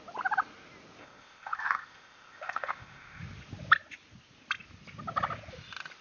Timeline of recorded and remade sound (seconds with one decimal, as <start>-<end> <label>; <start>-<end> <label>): 0.0-1.0 recorded; 1.0-3.2 remade; 3.2-6.0 recorded